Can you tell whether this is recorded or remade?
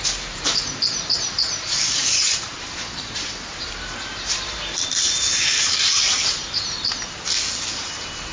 remade